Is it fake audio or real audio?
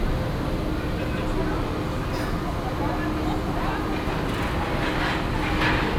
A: real